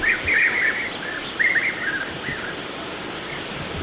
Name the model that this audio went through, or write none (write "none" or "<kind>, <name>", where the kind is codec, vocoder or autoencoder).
none